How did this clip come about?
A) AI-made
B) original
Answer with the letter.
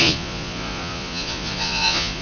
A